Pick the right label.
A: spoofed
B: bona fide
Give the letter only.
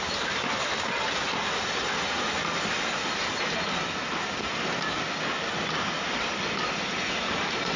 B